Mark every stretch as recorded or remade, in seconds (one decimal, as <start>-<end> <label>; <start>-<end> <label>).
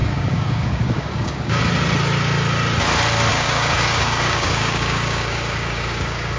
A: 0.0-1.6 remade; 1.6-3.3 recorded; 3.3-6.4 remade